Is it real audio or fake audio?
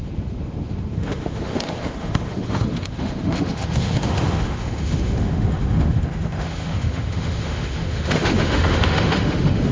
fake